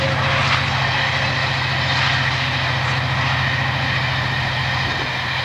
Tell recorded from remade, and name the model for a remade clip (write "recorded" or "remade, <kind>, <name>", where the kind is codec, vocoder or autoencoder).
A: recorded